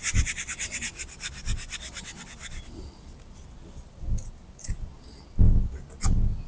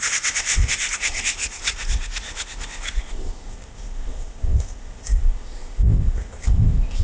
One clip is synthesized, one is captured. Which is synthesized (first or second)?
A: second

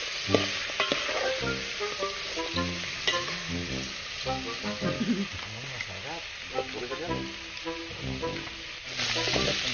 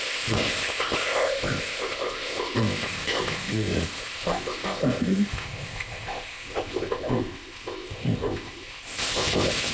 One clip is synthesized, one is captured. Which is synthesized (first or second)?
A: second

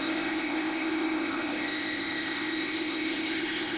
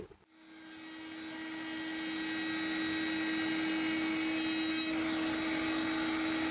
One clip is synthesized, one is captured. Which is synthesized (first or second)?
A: first